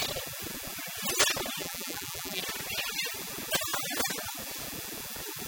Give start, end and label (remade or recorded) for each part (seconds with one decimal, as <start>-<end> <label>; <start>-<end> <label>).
0.0-1.6 recorded; 1.6-2.4 remade; 2.4-5.5 recorded